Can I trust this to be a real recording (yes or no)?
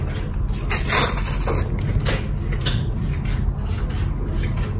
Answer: yes